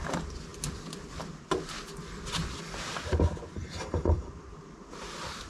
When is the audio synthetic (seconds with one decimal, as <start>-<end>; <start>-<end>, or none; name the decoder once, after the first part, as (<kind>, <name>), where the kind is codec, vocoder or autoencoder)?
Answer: 3.6-4.3 (vocoder, BigVGAN v2)